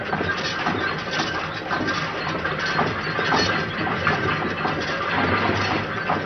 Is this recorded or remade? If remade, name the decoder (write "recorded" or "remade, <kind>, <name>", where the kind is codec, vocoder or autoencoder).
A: recorded